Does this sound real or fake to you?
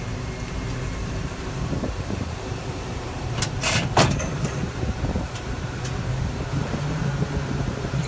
fake